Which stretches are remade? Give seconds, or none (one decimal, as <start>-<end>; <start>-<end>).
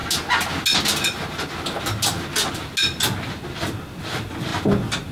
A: none